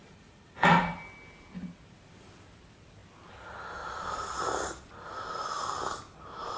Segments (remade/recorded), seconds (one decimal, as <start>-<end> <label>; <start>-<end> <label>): 0.0-0.8 remade; 0.8-6.6 recorded